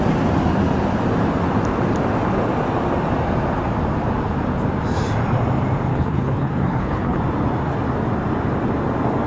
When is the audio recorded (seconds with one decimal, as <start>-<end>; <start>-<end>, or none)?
0.0-5.9; 7.2-9.3